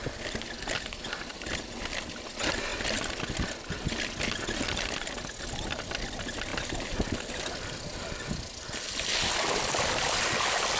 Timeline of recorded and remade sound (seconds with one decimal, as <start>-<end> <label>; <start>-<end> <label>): 0.0-10.8 recorded